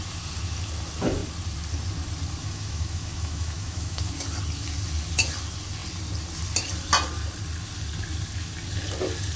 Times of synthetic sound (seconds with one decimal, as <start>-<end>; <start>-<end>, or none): 2.4-4.1